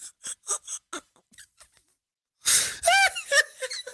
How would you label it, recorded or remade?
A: recorded